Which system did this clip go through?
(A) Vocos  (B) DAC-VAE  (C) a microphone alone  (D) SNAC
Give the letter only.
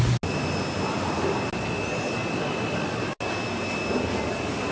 C